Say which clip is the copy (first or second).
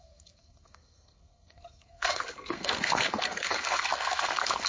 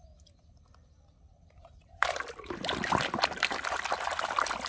first